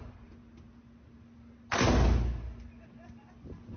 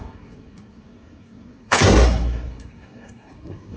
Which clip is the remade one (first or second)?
second